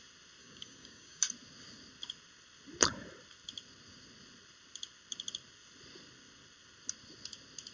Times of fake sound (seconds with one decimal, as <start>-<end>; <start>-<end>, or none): 0.4-1.2

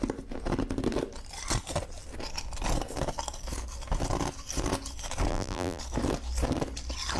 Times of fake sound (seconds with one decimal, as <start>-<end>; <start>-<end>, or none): 5.3-5.8

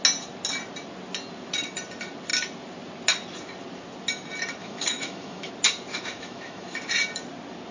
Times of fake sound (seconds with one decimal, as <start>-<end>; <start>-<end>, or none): 4.6-5.5; 5.9-6.9

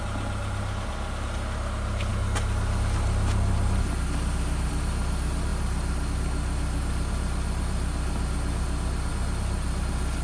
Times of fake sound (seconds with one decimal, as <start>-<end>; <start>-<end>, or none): none

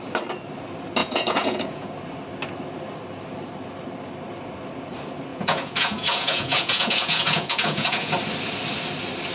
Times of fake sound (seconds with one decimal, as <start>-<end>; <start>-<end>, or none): 1.0-1.9; 5.3-8.1